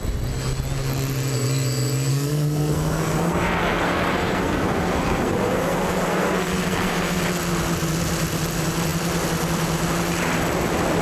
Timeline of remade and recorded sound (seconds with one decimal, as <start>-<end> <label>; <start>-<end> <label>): 0.0-2.1 recorded; 2.1-7.2 remade; 7.2-11.0 recorded

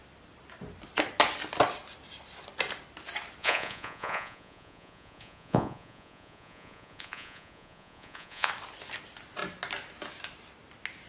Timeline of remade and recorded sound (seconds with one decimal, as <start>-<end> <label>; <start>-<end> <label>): 0.0-3.4 recorded; 3.4-8.5 remade; 8.5-11.1 recorded

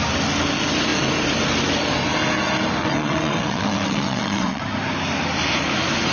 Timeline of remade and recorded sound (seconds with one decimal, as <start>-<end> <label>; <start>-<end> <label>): 0.0-2.8 recorded; 2.8-4.6 remade; 4.6-6.1 recorded

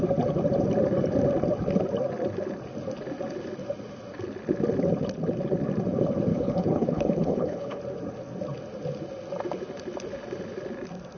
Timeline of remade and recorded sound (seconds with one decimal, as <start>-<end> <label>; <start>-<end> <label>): 0.0-6.3 recorded; 6.3-7.8 remade; 7.8-11.2 recorded

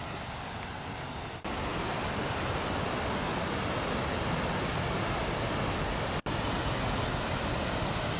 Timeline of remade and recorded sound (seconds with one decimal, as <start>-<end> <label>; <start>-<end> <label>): 0.0-8.2 recorded

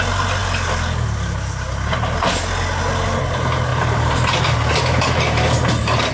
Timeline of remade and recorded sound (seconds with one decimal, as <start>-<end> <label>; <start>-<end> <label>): 0.0-3.7 recorded; 3.7-4.8 remade; 4.8-6.1 recorded